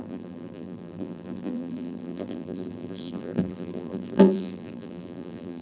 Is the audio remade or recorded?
remade